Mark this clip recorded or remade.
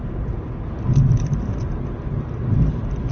recorded